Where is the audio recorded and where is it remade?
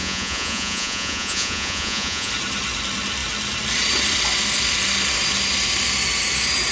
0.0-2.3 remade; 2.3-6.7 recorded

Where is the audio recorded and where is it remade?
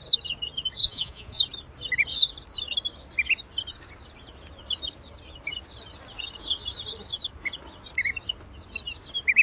0.0-0.8 recorded; 0.8-1.4 remade; 1.4-9.4 recorded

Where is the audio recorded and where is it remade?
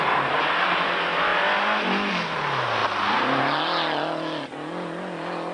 0.0-5.5 recorded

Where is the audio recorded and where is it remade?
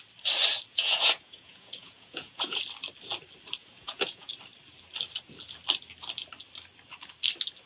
0.0-0.7 recorded; 0.7-2.6 remade; 2.6-3.6 recorded; 3.6-4.3 remade; 4.3-7.7 recorded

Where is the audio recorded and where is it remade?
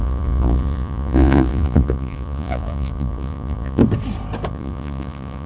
0.0-3.8 remade; 3.8-4.5 recorded; 4.5-5.5 remade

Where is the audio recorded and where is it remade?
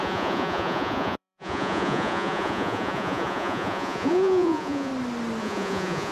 0.0-4.9 remade; 4.9-5.4 recorded; 5.4-6.1 remade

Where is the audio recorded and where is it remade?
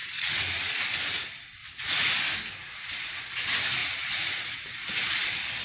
0.0-0.7 remade; 0.7-1.6 recorded; 1.6-2.1 remade; 2.1-3.8 recorded; 3.8-4.5 remade; 4.5-5.6 recorded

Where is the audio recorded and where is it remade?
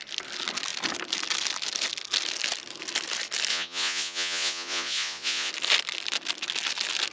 0.0-3.5 recorded; 3.5-5.5 remade; 5.5-7.1 recorded